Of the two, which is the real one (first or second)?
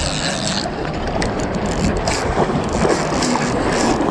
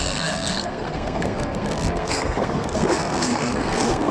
first